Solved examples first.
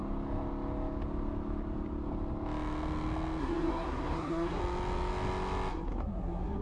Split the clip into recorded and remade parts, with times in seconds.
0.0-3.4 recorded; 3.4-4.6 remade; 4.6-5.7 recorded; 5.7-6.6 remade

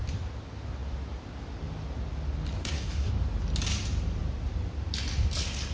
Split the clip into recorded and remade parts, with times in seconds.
0.0-2.6 recorded; 2.6-3.1 remade; 3.1-5.7 recorded

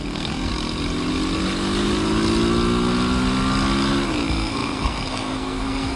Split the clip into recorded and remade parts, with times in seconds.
0.0-0.5 remade; 0.5-4.1 recorded; 4.1-6.0 remade

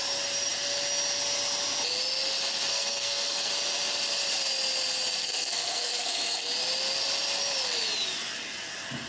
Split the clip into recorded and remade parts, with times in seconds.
0.0-2.7 recorded; 2.7-3.5 remade; 3.5-5.1 recorded; 5.1-6.4 remade; 6.4-9.1 recorded

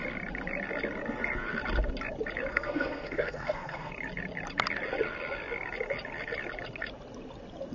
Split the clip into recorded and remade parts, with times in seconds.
0.0-2.5 recorded; 2.5-3.9 remade; 3.9-7.7 recorded